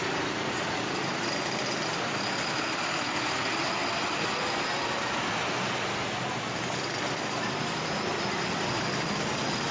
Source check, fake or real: real